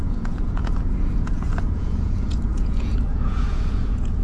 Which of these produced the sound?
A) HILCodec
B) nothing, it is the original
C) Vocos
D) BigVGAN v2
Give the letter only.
C